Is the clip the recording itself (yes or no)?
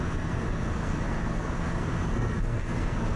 no